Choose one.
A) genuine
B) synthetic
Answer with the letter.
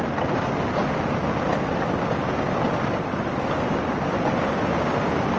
A